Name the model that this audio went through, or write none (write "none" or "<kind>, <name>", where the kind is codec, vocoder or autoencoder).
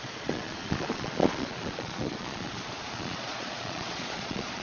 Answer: vocoder, Vocos